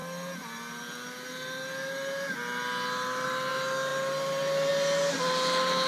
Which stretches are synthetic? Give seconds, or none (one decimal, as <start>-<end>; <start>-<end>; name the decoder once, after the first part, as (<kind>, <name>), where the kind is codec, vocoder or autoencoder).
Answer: none